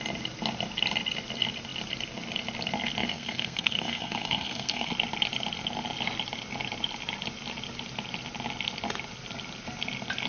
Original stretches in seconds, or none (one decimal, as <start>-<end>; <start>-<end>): 0.0-3.0; 4.9-10.3